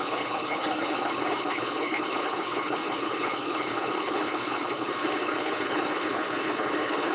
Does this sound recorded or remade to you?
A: remade